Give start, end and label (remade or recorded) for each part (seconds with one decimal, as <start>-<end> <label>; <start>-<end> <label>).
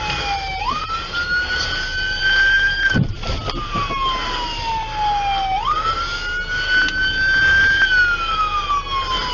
0.0-9.3 recorded